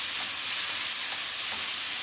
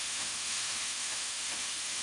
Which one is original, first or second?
first